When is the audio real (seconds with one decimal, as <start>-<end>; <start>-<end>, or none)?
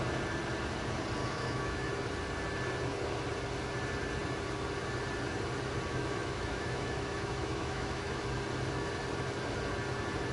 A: 0.0-1.2; 1.9-5.9; 8.2-10.3